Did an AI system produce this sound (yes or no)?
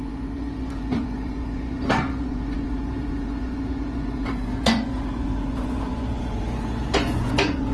yes